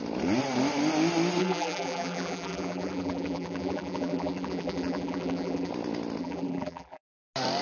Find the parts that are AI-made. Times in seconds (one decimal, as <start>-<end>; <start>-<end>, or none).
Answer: 1.4-5.7; 6.2-7.0